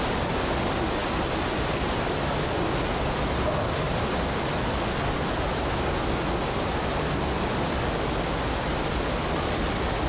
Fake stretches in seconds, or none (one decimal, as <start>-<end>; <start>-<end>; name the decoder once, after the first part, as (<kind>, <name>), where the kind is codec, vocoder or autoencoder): none